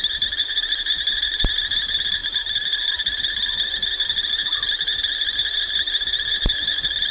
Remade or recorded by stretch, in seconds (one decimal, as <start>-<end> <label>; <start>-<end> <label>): 0.0-7.1 recorded